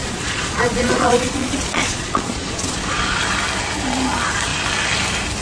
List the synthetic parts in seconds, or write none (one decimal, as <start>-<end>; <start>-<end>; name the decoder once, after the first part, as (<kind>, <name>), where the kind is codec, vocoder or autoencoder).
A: 0.0-3.2 (vocoder, Vocos)